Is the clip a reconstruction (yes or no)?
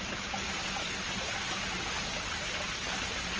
no